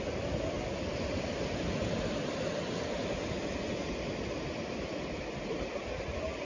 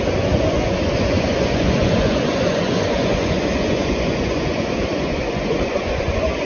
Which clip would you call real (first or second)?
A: first